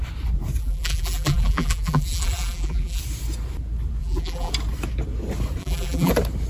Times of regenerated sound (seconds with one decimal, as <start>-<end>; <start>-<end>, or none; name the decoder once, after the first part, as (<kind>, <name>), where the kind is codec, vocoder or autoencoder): 0.6-3.0 (vocoder, BigVGAN v2); 4.0-4.5; 5.6-6.1